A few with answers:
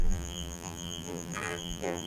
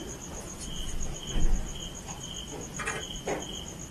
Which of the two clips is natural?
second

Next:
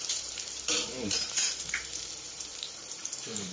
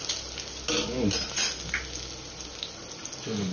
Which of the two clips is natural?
second